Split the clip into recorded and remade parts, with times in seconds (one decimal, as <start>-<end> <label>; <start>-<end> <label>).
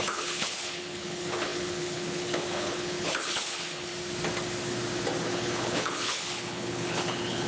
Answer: 0.0-3.9 remade; 3.9-5.3 recorded; 5.3-7.5 remade